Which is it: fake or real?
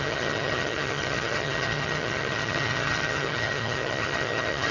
fake